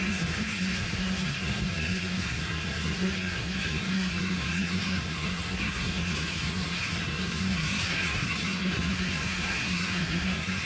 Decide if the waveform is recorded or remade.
remade